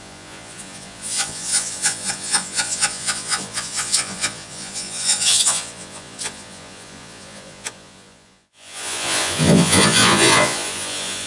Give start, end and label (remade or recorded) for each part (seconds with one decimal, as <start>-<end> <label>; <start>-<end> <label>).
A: 0.0-11.3 remade